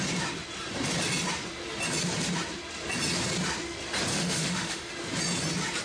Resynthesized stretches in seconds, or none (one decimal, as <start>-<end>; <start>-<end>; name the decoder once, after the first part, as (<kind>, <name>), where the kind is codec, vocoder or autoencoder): 4.1-4.9 (autoencoder, DAC-VAE)